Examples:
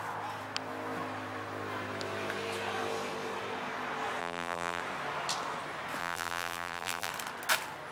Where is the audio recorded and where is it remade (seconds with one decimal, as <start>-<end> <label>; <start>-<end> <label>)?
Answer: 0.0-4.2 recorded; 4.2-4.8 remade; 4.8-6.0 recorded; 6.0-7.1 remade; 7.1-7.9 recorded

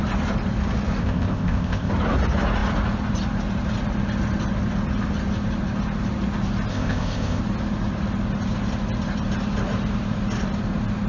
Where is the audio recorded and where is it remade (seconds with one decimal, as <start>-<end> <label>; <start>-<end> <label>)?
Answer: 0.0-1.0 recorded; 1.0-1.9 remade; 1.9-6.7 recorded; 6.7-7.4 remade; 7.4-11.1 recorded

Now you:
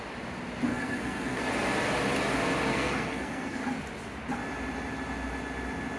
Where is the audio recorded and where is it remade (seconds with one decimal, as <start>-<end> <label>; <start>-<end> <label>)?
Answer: 0.0-0.7 recorded; 0.7-1.4 remade; 1.4-2.7 recorded; 2.7-3.6 remade; 3.6-6.0 recorded

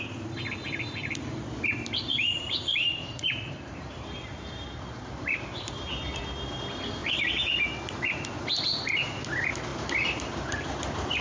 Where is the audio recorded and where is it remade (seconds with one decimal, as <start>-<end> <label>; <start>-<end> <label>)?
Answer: 0.0-2.1 recorded; 2.1-6.2 remade; 6.2-11.2 recorded

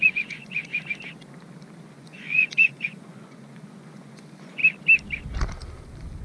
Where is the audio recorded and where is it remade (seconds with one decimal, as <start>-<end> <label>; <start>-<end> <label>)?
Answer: 0.0-0.7 remade; 0.7-1.8 recorded; 1.8-4.6 remade; 4.6-6.2 recorded

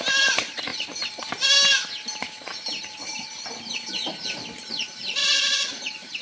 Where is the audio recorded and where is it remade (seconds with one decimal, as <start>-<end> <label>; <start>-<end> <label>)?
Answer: 0.0-0.7 remade; 0.7-3.9 recorded; 3.9-6.2 remade